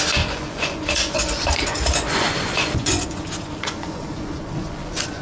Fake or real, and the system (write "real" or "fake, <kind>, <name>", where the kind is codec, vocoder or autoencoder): fake, vocoder, Vocos